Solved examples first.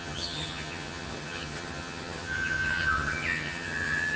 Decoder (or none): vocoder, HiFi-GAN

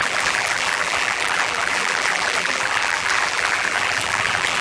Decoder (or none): vocoder, BigVGAN v2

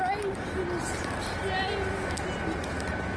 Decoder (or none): none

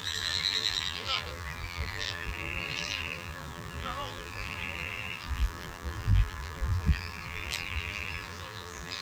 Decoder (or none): vocoder, BigVGAN v2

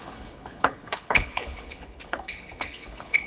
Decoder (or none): codec, HILCodec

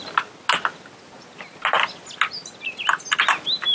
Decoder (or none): none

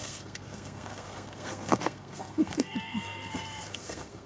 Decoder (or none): codec, SNAC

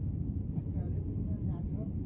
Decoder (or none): none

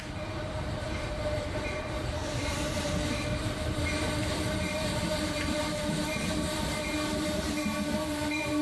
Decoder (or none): vocoder, BigVGAN v2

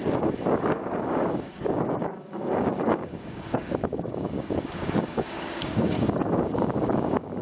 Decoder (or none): codec, DAC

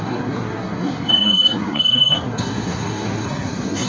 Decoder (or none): codec, SNAC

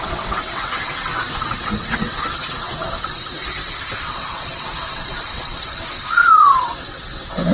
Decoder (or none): vocoder, WaveNeXt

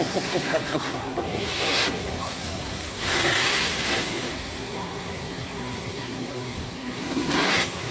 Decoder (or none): codec, SNAC